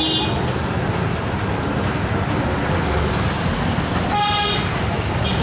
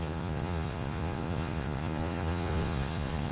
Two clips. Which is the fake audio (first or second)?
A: second